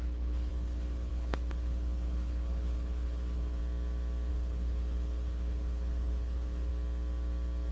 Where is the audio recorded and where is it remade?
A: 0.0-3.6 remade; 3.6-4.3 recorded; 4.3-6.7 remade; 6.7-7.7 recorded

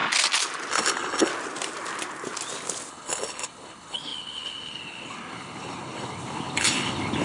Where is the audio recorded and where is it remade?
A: 0.0-0.7 recorded; 0.7-1.3 remade; 1.3-2.9 recorded; 2.9-7.2 remade

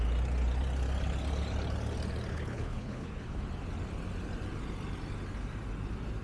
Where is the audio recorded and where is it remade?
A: 0.0-2.3 recorded; 2.3-3.4 remade; 3.4-6.2 recorded

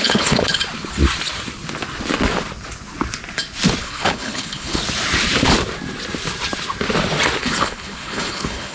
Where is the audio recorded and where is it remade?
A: 0.0-0.6 remade; 0.6-3.8 recorded; 3.8-4.8 remade; 4.8-7.4 recorded; 7.4-8.7 remade

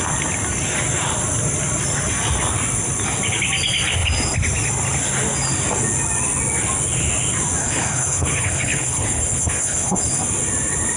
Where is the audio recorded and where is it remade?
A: 0.0-7.6 recorded; 7.6-10.2 remade; 10.2-11.0 recorded

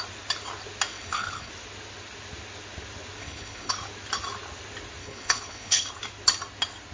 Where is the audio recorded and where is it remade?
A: 0.0-0.9 recorded; 0.9-1.5 remade; 1.5-3.2 recorded; 3.2-3.7 remade; 3.7-5.0 recorded; 5.0-5.9 remade; 5.9-6.9 recorded